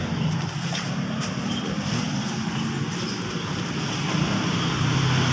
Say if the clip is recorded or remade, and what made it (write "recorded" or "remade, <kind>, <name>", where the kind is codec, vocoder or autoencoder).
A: recorded